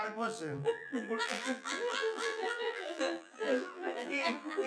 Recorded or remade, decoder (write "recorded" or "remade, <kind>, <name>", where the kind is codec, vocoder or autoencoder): remade, vocoder, BigVGAN v2